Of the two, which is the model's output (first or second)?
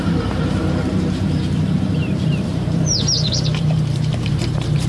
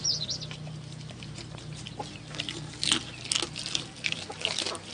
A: first